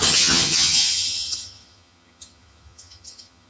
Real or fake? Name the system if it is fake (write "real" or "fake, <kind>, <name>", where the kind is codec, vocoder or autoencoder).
fake, vocoder, HiFi-GAN